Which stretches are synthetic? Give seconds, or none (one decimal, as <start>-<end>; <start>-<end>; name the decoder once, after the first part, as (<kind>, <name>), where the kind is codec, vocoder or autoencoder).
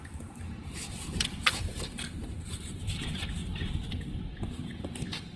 0.0-3.4 (vocoder, BigVGAN v2); 4.5-5.4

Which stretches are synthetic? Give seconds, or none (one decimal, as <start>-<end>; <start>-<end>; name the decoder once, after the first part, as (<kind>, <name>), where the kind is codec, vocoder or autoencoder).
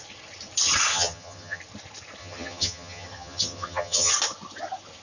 0.9-1.6 (vocoder, HiFi-GAN); 2.2-4.1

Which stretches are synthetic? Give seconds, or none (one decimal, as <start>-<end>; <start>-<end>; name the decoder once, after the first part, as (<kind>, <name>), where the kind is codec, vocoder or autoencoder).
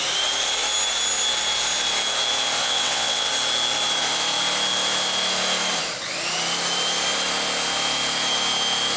2.6-3.3 (vocoder, WaveNeXt)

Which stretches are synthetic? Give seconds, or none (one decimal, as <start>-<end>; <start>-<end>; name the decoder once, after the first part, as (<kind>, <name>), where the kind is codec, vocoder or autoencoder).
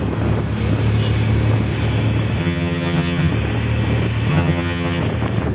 2.4-3.3 (vocoder, HiFi-GAN); 4.3-5.0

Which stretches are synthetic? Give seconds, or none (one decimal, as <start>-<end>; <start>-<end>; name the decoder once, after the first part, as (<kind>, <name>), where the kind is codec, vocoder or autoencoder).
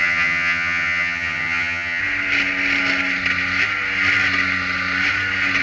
0.0-2.0 (vocoder, HiFi-GAN)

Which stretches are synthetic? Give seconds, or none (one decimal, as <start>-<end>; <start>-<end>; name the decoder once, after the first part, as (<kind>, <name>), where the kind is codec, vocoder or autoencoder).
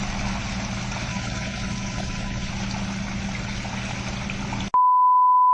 1.1-2.5 (codec, HILCodec)